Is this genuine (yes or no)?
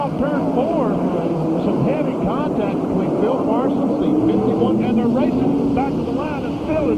no